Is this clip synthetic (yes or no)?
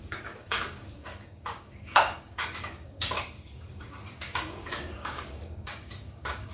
yes